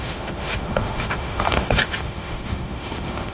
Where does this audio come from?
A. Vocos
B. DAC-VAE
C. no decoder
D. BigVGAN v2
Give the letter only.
B